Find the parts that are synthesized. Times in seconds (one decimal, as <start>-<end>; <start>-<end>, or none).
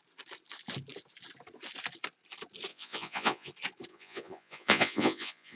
2.7-3.5; 3.9-5.6